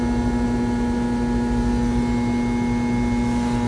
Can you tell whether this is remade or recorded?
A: recorded